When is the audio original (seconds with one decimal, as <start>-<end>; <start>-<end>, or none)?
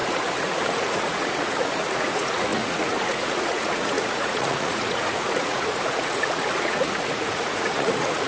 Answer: none